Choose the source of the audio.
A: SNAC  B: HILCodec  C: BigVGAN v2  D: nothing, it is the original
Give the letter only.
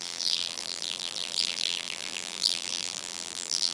C